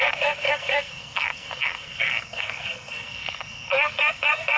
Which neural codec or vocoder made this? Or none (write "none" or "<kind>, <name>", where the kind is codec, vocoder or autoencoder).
codec, SNAC